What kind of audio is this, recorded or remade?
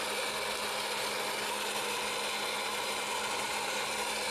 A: recorded